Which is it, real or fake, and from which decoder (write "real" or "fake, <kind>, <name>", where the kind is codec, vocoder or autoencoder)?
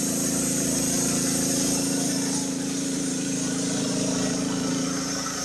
fake, vocoder, BigVGAN v2